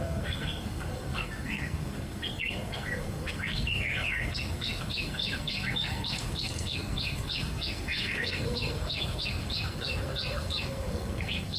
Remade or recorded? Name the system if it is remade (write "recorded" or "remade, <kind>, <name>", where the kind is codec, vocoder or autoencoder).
remade, codec, SNAC